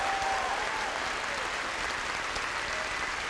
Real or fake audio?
real